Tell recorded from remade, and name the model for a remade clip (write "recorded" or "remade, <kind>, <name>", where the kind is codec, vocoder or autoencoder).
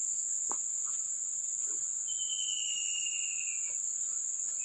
remade, vocoder, Vocos